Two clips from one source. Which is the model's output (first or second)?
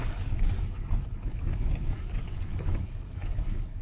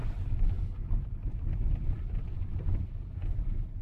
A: first